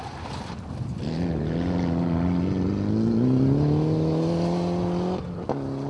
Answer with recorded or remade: recorded